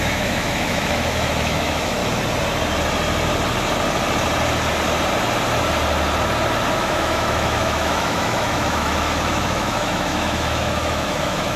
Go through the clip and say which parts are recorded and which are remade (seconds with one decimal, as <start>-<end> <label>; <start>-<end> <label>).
0.0-2.0 remade; 2.0-6.7 recorded; 6.7-11.6 remade

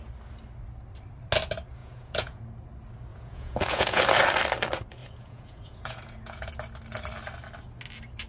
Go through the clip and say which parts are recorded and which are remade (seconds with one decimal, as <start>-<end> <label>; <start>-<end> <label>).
0.0-1.8 recorded; 1.8-2.4 remade; 2.4-3.1 recorded; 3.1-4.0 remade; 4.0-5.0 recorded; 5.0-6.5 remade; 6.5-8.3 recorded

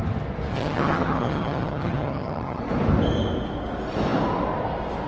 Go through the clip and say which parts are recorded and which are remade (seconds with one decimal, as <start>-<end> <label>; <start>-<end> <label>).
0.0-0.5 recorded; 0.5-2.6 remade; 2.6-5.1 recorded

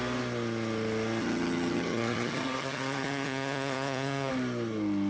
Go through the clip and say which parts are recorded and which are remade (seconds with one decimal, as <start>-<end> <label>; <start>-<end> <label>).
0.0-1.2 recorded; 1.2-4.3 remade; 4.3-5.1 recorded

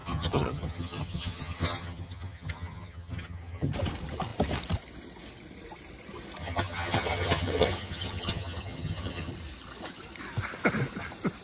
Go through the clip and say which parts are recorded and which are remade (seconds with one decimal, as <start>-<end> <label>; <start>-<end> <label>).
0.0-3.7 remade; 3.7-6.4 recorded; 6.4-9.3 remade; 9.3-11.4 recorded